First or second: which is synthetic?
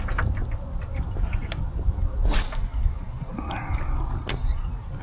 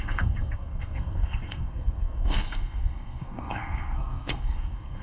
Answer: second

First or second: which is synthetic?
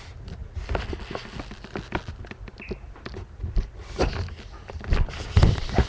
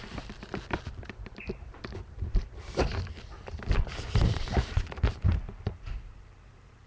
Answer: second